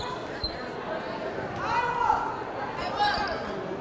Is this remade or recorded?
recorded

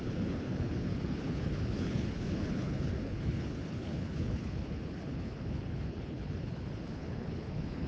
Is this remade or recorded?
remade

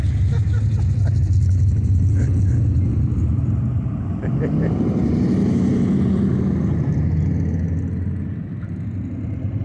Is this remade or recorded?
recorded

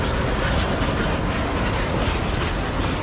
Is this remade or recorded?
recorded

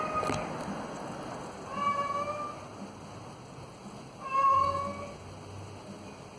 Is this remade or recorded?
recorded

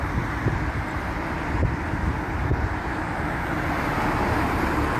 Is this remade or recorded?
recorded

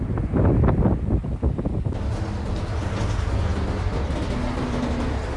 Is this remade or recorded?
recorded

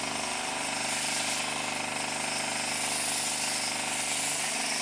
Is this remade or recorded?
recorded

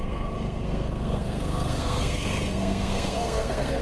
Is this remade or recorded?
remade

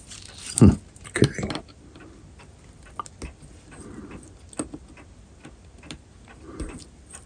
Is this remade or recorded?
recorded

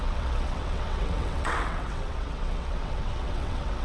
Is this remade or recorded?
remade